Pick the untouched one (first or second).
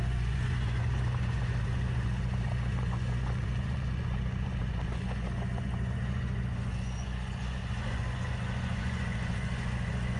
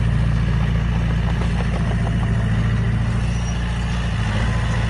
second